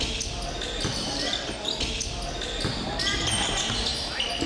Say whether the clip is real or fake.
real